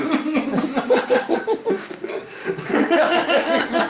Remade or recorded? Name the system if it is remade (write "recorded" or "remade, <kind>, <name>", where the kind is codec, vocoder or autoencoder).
remade, codec, DAC